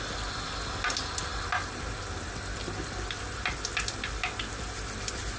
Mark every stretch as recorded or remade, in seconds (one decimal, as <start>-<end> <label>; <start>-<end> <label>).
0.0-5.4 recorded

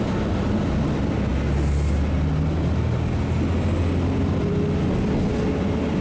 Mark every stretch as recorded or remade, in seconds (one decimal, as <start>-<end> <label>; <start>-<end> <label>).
0.0-6.0 recorded

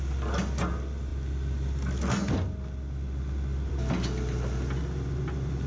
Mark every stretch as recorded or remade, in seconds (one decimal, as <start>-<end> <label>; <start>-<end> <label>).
0.0-5.7 recorded

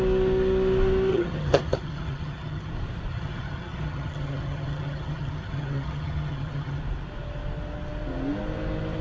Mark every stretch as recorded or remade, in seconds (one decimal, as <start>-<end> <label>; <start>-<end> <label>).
0.0-1.1 recorded; 1.1-2.7 remade; 2.7-3.1 recorded; 3.1-6.8 remade; 6.8-9.0 recorded

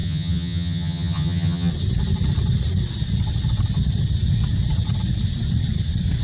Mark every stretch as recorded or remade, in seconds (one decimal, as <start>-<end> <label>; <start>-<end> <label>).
0.0-1.7 remade; 1.7-6.2 recorded

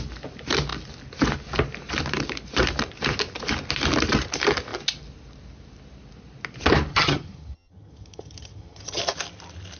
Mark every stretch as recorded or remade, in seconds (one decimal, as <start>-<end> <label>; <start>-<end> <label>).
0.0-6.9 recorded; 6.9-9.0 remade; 9.0-9.8 recorded

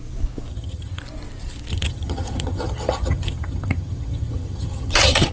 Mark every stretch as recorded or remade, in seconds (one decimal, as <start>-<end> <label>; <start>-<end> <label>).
0.0-0.5 recorded; 0.5-1.0 remade; 1.0-1.7 recorded; 1.7-5.3 remade

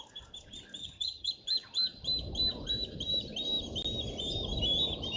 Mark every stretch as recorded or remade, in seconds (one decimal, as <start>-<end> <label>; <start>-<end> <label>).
0.0-0.8 recorded; 0.8-1.3 remade; 1.3-5.2 recorded